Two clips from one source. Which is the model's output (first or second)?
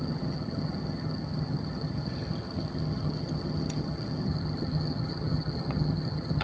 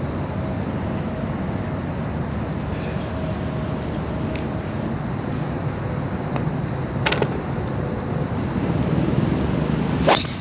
first